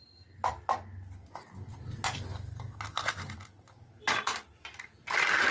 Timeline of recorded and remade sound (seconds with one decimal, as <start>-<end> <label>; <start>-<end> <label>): 0.0-5.5 recorded